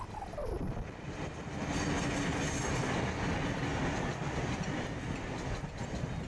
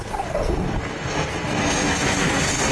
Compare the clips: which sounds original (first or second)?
first